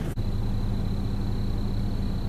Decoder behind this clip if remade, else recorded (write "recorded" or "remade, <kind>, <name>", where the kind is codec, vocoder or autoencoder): recorded